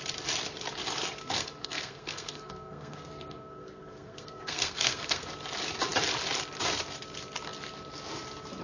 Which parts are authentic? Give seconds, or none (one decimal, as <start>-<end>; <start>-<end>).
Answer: 0.0-1.2; 5.3-8.6